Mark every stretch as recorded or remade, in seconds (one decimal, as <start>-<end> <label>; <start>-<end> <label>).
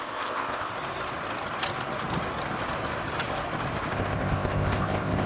0.0-0.7 remade; 0.7-3.9 recorded; 3.9-5.3 remade